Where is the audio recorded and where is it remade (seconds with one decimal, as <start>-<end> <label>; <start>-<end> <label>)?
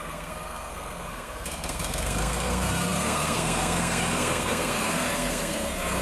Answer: 0.0-6.0 remade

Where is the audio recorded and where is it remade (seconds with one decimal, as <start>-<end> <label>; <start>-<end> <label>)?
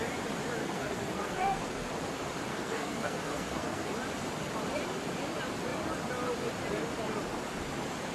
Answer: 0.0-0.6 recorded; 0.6-1.9 remade; 1.9-2.5 recorded; 2.5-3.9 remade; 3.9-8.1 recorded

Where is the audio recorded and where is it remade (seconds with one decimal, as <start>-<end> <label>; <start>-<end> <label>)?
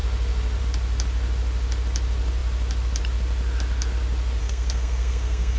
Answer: 0.0-4.4 recorded; 4.4-5.6 remade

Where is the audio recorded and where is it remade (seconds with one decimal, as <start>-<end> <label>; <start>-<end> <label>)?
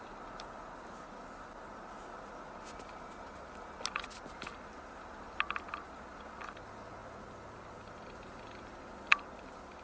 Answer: 0.0-9.8 recorded